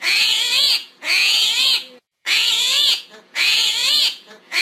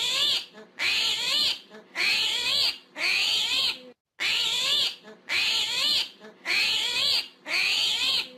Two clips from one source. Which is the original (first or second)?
second